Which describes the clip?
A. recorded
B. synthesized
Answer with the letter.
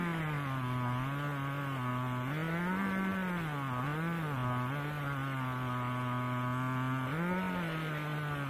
A